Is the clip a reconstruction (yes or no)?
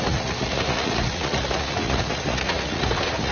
yes